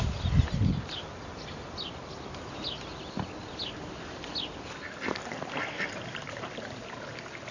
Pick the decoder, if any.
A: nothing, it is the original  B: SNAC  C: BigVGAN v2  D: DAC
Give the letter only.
A